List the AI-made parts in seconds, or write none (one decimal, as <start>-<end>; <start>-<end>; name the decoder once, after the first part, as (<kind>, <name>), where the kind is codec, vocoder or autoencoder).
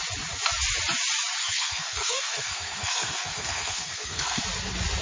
1.4-4.4 (codec, SNAC)